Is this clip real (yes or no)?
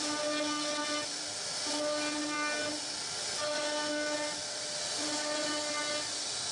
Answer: yes